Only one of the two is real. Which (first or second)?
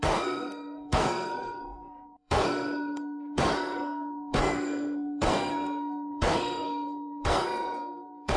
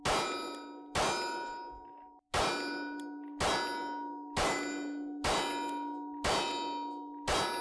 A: second